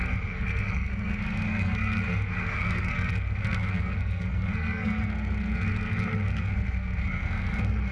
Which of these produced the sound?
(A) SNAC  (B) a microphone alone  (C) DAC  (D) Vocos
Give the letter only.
A